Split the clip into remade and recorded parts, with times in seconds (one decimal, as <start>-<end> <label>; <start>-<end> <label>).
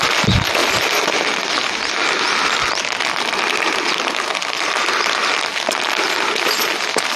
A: 0.0-7.2 recorded